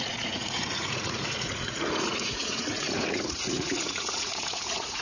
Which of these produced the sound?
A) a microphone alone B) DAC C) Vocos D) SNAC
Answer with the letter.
C